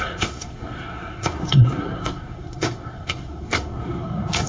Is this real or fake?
fake